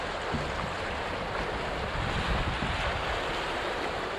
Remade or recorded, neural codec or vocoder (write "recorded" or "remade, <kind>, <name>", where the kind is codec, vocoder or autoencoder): recorded